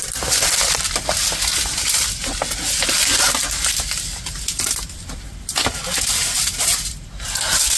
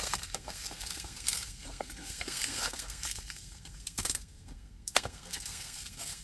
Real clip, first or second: first